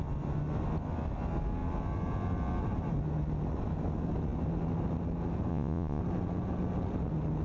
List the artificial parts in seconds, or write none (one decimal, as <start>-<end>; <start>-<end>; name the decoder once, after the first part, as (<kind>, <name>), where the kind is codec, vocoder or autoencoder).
5.5-6.0 (vocoder, Vocos)